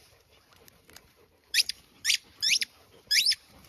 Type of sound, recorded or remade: remade